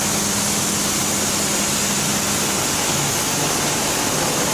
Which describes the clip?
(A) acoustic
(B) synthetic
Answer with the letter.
A